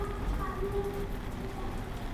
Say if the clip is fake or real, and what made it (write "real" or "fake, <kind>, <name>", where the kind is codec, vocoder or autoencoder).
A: real